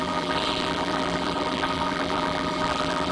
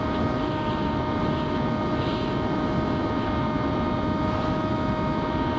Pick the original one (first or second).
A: second